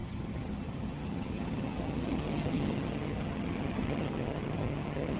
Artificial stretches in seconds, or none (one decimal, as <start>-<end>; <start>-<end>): 0.0-5.2